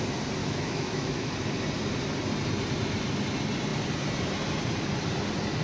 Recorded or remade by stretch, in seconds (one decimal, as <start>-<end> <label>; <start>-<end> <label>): 0.0-0.4 recorded; 0.4-1.3 remade; 1.3-5.6 recorded